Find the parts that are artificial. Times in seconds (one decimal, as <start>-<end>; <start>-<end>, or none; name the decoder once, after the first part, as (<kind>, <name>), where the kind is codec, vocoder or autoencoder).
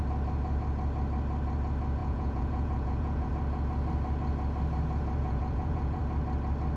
2.0-3.3 (vocoder, Vocos); 5.2-6.0